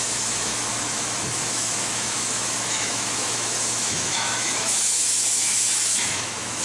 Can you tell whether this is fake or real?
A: fake